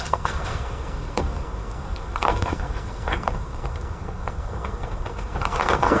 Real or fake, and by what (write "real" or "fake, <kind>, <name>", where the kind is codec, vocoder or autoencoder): fake, codec, SNAC